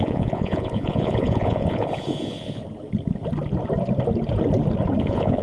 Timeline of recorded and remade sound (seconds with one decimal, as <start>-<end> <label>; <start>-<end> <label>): 0.0-2.6 remade; 2.6-5.0 recorded; 5.0-5.4 remade